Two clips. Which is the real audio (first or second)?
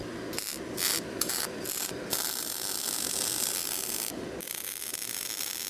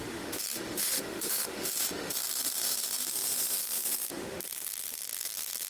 first